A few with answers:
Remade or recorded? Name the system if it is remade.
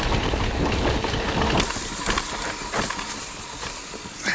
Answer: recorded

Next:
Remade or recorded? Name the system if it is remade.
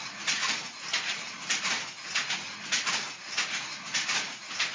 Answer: remade, vocoder, Vocos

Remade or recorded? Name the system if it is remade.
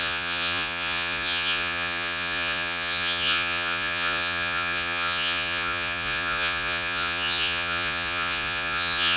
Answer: remade, vocoder, Vocos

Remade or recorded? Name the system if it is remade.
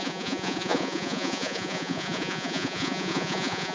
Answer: remade, vocoder, Vocos